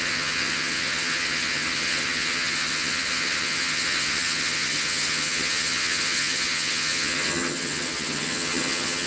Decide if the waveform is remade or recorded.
remade